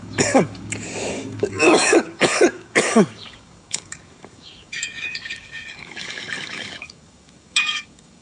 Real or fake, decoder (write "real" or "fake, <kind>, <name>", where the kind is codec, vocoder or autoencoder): fake, codec, DAC